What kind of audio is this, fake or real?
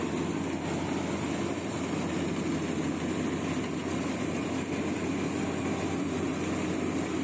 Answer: real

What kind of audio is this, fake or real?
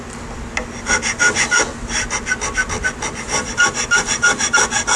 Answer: real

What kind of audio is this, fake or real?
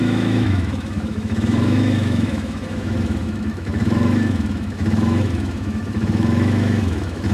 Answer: fake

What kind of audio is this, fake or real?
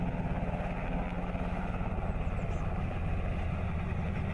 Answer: real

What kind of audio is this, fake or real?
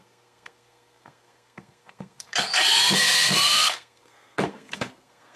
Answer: fake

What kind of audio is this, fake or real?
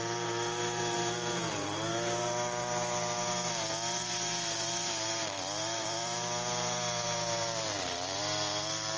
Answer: fake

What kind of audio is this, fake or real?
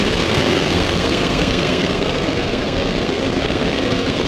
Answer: fake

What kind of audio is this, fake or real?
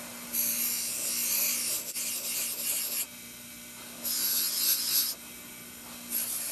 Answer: real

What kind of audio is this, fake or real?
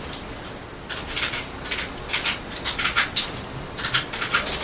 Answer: real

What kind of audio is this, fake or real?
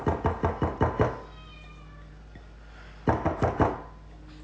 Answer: real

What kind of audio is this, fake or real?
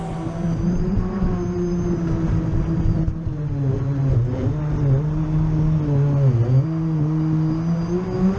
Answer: real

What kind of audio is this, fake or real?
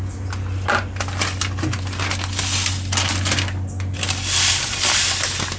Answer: real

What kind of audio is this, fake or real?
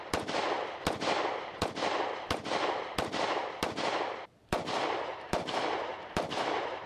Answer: fake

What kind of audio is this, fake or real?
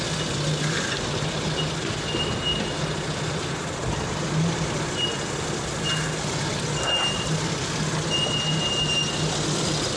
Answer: real